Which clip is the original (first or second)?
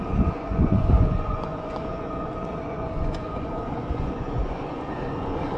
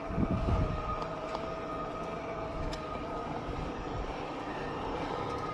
second